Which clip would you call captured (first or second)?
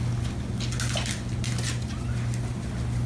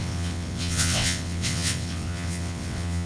first